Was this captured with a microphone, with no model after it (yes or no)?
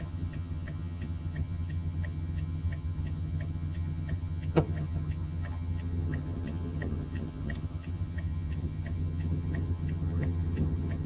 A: no